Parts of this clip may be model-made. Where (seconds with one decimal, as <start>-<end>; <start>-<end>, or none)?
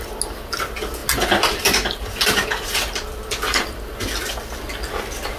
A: none